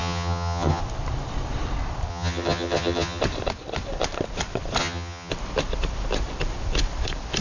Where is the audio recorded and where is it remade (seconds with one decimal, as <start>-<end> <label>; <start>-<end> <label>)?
0.0-0.8 remade; 0.8-2.1 recorded; 2.1-3.2 remade; 3.2-4.8 recorded; 4.8-5.3 remade; 5.3-7.4 recorded